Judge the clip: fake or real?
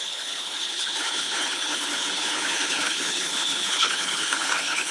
fake